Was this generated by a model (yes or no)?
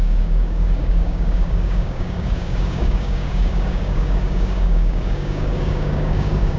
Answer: yes